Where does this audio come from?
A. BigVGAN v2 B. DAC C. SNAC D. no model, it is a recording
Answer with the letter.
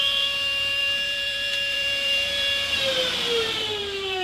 A